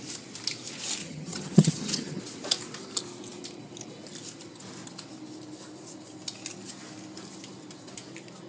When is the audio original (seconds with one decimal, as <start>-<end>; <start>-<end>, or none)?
0.0-1.0; 2.2-8.5